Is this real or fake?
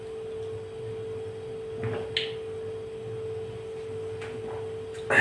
real